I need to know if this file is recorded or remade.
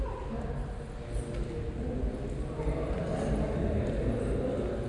recorded